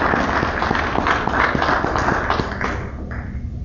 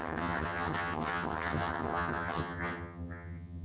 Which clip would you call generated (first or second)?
second